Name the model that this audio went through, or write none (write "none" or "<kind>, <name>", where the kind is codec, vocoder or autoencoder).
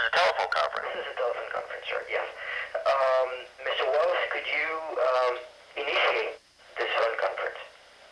none